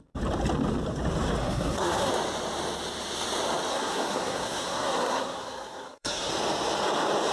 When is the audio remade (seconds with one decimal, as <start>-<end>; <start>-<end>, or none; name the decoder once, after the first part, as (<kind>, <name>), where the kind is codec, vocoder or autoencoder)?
1.4-2.1 (codec, SNAC); 3.7-6.3